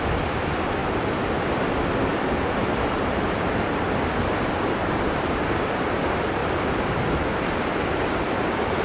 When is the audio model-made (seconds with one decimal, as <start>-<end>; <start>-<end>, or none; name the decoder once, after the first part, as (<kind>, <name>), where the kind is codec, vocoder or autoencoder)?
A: 0.0-0.8 (vocoder, BigVGAN v2); 1.7-8.8